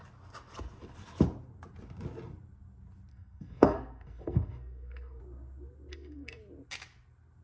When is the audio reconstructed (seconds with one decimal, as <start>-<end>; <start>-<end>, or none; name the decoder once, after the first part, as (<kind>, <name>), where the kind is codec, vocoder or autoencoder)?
3.1-5.2 (codec, SNAC); 5.9-6.4